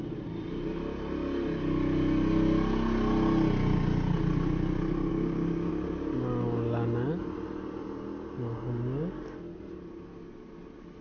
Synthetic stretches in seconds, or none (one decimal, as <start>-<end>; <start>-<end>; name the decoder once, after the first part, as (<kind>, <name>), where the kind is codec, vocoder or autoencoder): 5.1-5.7 (codec, DAC)